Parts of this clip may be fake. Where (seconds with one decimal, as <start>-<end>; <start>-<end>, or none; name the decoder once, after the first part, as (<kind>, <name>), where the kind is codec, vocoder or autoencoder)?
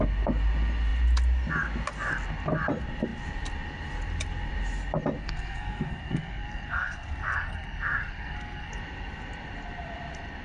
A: 5.2-8.7 (codec, SNAC)